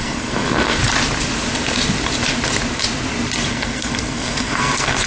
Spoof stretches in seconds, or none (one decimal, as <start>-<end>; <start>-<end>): 0.0-0.8; 3.5-5.1